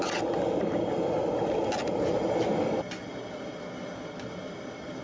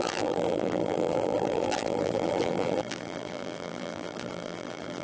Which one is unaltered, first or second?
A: first